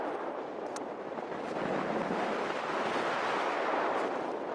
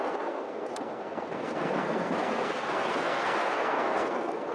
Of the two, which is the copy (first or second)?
second